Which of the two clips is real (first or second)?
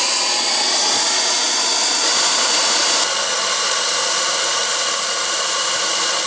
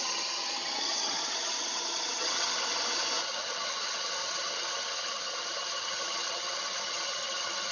first